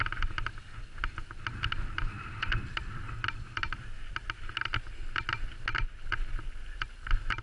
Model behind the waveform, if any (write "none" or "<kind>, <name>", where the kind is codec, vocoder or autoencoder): none